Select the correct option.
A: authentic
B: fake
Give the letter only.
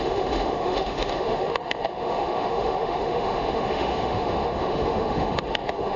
B